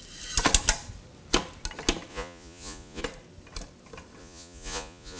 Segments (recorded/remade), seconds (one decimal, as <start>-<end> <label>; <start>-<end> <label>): 0.0-2.1 recorded; 2.1-3.0 remade; 3.0-4.2 recorded; 4.2-5.2 remade